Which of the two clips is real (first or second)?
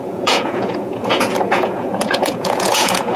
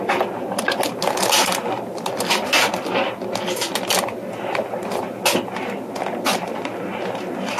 second